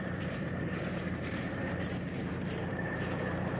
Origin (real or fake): fake